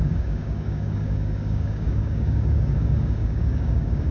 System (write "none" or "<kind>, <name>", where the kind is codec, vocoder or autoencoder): codec, DAC